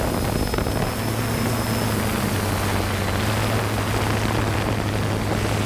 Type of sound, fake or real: real